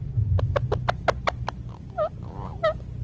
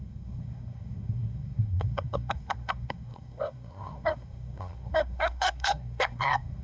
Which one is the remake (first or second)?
second